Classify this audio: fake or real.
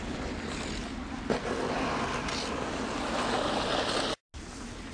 real